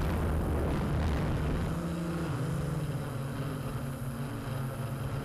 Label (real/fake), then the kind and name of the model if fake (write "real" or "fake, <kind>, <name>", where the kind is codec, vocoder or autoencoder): real